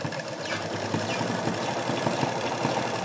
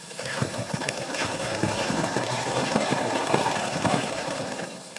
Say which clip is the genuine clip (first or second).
first